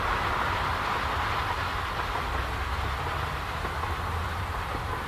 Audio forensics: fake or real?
real